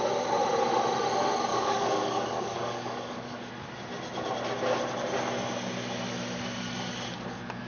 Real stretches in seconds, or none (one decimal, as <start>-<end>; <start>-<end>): 0.0-1.5; 3.5-7.7